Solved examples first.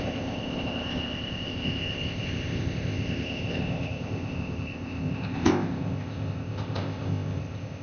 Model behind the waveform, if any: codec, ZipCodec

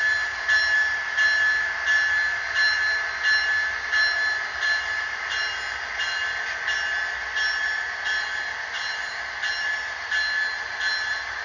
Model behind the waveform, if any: none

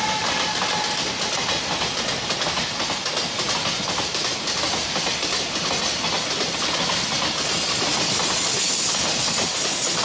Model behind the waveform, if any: none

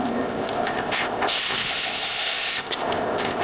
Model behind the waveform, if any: codec, ZipCodec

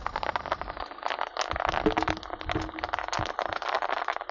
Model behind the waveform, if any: none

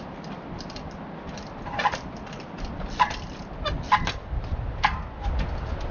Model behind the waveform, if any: none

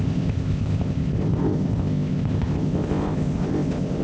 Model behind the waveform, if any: codec, ZipCodec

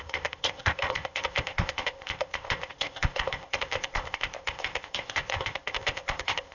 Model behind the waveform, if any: codec, ZipCodec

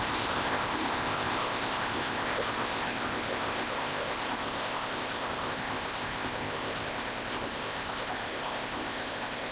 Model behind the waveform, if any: codec, ZipCodec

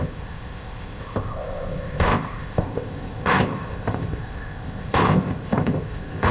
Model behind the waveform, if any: codec, ZipCodec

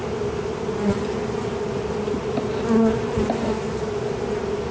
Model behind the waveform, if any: none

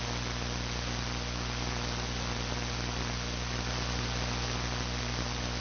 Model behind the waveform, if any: none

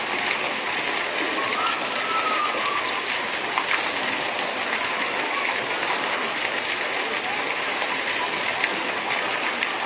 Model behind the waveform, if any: none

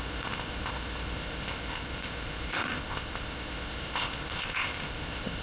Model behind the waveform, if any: codec, ZipCodec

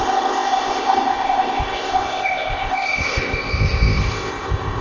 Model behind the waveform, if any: codec, ZipCodec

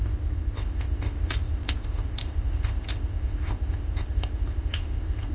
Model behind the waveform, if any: codec, ZipCodec